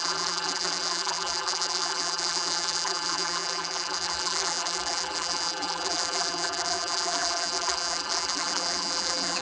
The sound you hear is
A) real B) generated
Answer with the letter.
B